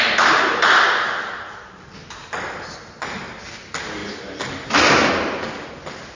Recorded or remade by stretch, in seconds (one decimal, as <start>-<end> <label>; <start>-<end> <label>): 0.0-6.1 recorded